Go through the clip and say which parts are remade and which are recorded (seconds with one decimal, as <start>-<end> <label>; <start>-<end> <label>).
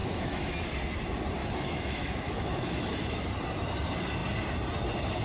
0.0-0.6 remade; 0.6-1.4 recorded; 1.4-3.3 remade; 3.3-5.2 recorded